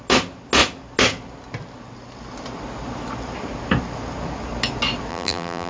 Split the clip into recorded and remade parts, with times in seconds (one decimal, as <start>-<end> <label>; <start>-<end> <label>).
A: 0.0-5.1 recorded; 5.1-5.7 remade